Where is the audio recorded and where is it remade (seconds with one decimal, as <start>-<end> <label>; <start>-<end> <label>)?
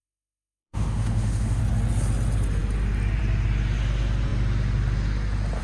0.0-1.6 remade; 1.6-5.6 recorded